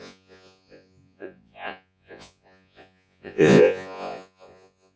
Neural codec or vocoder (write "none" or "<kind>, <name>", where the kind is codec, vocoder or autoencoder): vocoder, Vocos